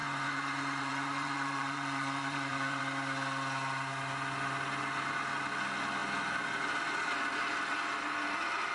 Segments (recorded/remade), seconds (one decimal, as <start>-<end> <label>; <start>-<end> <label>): 0.0-2.8 remade; 2.8-8.7 recorded